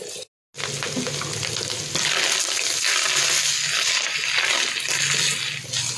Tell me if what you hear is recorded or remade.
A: recorded